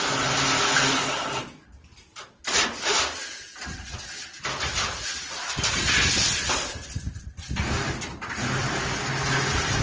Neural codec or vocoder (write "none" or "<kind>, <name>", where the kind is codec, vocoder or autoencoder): none